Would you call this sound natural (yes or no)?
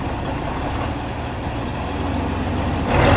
yes